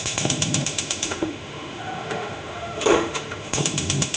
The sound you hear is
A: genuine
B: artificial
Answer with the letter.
B